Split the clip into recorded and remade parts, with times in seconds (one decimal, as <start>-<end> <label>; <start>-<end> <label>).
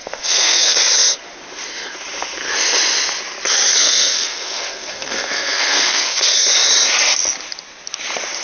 0.0-0.8 remade; 0.8-3.7 recorded; 3.7-6.3 remade; 6.3-8.4 recorded